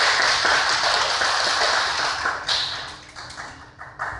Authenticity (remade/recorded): recorded